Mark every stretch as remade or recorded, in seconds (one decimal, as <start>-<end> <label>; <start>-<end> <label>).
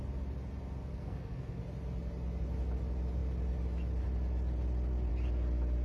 0.0-0.9 recorded; 0.9-1.6 remade; 1.6-5.8 recorded